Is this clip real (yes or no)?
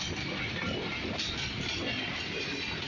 yes